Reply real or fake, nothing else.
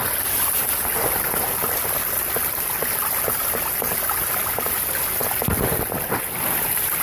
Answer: real